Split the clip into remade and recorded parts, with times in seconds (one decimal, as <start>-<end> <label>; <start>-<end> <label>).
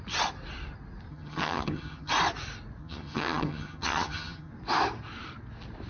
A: 0.0-1.1 recorded; 1.1-2.1 remade; 2.1-2.8 recorded; 2.8-4.5 remade; 4.5-5.9 recorded